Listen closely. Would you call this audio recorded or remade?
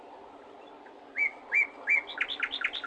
recorded